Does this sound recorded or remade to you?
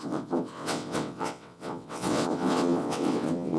remade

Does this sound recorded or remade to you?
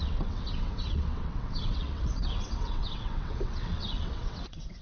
remade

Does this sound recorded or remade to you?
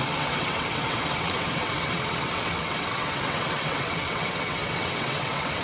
remade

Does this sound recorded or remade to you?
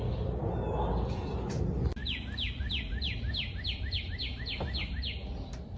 recorded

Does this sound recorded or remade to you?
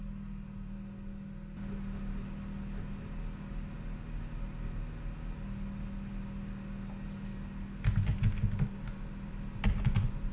recorded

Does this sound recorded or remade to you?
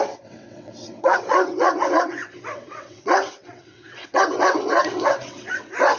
remade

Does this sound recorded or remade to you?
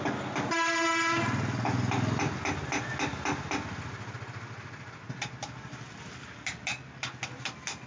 recorded